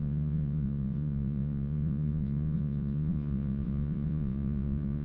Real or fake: fake